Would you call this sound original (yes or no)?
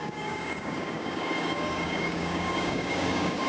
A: no